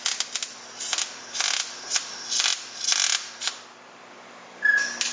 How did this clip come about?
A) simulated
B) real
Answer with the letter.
B